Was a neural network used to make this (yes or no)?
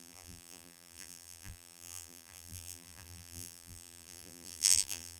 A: yes